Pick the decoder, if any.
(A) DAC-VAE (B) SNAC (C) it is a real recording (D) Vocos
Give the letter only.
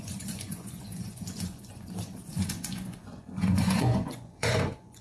D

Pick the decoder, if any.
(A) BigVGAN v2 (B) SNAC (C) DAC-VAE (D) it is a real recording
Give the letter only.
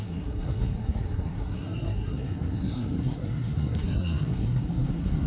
B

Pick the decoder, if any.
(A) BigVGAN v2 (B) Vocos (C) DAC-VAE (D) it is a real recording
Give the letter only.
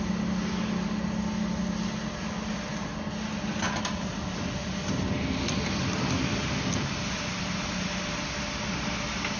D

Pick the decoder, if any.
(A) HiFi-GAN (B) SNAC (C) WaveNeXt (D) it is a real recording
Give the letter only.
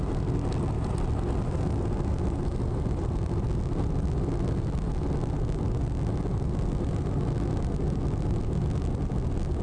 D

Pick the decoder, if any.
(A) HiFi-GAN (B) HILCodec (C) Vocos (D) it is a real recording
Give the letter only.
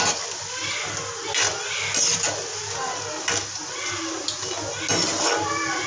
D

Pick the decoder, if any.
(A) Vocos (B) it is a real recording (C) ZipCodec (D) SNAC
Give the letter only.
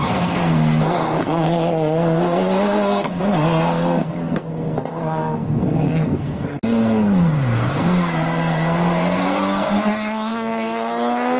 D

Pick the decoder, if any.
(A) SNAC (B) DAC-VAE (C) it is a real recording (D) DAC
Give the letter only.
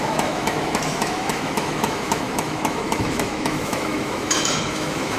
B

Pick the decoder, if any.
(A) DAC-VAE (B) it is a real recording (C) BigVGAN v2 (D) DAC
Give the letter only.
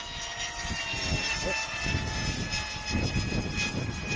B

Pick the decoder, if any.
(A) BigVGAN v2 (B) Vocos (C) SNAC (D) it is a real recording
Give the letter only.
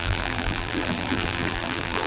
A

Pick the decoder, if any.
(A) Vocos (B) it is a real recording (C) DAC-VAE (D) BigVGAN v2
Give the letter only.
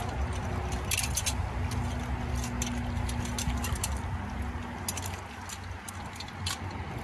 B